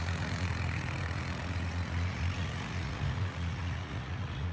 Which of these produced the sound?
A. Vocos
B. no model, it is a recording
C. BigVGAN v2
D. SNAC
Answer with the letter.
A